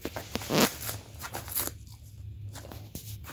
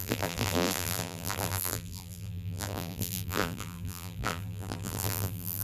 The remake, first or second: second